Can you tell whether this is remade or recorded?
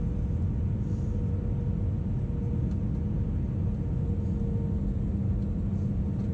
recorded